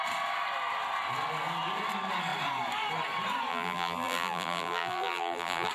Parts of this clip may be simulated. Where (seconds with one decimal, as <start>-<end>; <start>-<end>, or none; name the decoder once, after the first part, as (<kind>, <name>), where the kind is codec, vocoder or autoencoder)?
3.5-5.7 (vocoder, BigVGAN v2)

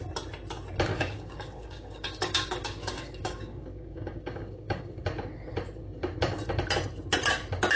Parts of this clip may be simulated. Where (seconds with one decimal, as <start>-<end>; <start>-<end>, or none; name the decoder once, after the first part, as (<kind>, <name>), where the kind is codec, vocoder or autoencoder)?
0.9-5.0 (codec, DAC)

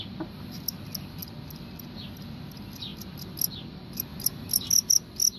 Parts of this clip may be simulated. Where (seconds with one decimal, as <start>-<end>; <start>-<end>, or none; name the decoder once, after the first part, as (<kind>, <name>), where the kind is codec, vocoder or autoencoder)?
none

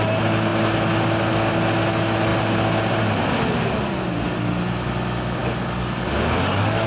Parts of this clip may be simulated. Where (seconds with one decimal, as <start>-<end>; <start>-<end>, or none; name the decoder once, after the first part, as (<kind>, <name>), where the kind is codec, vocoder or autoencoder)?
5.4-6.9 (codec, DAC)